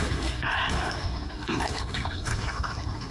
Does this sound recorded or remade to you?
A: remade